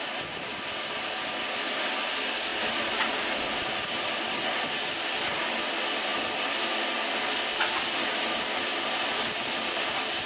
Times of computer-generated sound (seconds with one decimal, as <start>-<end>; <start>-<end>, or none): none